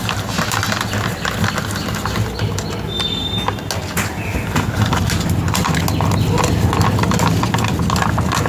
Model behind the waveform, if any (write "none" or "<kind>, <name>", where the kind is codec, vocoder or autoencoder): none